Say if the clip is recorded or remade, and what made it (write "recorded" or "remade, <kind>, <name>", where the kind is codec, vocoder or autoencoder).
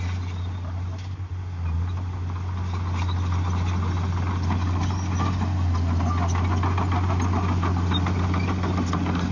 recorded